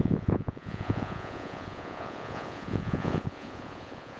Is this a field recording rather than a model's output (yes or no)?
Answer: no